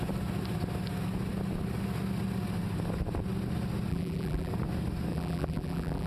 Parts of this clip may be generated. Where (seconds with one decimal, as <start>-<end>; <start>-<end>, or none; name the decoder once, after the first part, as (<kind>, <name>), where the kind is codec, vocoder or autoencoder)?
3.9-4.5 (vocoder, BigVGAN v2); 5.1-6.1